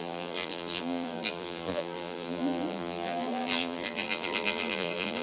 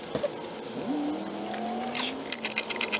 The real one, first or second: second